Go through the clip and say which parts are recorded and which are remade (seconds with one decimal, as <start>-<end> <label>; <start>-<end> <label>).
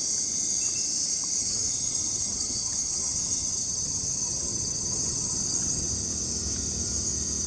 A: 0.0-1.4 recorded; 1.4-5.9 remade; 5.9-7.5 recorded